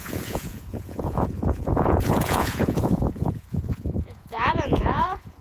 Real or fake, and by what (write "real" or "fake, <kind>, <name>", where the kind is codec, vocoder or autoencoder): fake, vocoder, Vocos